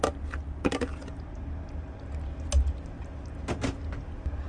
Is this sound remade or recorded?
recorded